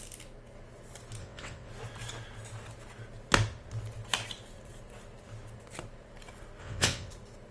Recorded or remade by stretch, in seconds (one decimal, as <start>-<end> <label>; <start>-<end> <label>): 0.0-1.2 recorded; 1.2-1.7 remade; 1.7-6.6 recorded; 6.6-7.1 remade; 7.1-7.5 recorded